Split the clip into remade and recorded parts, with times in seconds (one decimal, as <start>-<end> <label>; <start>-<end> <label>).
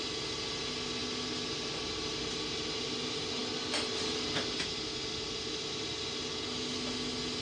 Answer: 0.0-7.4 recorded